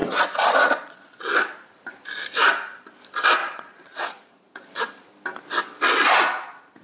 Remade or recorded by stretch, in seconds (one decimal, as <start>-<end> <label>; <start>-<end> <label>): 0.0-1.2 remade; 1.2-3.4 recorded; 3.4-4.8 remade; 4.8-6.8 recorded